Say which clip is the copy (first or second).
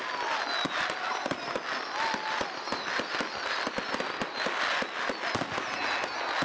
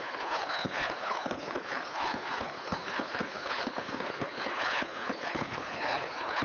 second